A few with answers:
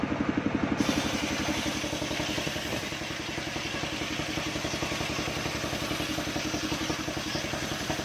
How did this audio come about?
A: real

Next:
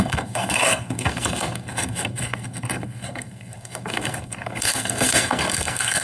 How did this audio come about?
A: fake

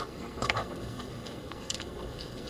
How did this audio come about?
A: fake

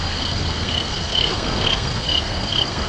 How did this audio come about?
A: fake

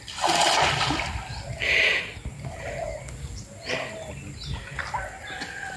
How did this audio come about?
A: real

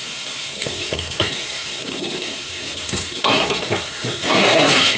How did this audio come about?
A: fake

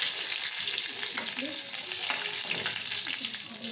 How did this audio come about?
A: real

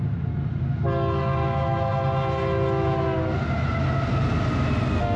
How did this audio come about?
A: real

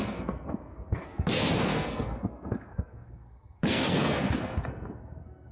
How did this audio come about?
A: fake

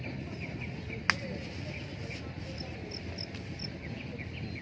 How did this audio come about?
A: real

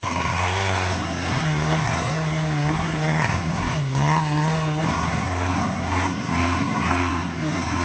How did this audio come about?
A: fake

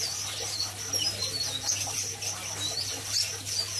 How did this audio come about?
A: real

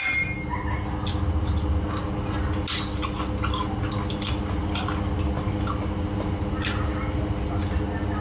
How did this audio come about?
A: real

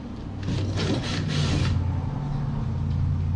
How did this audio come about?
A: real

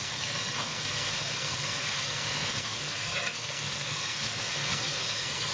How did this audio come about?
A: fake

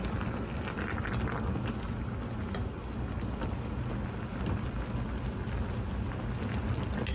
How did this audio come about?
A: real